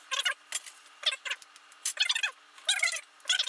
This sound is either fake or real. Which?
real